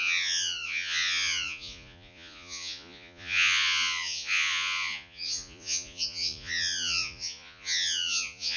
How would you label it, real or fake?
fake